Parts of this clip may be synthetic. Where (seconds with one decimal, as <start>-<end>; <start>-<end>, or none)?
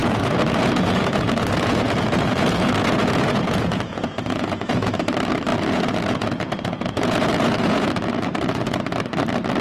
0.0-4.9; 5.5-8.8